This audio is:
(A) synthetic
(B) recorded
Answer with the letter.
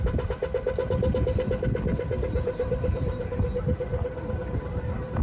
B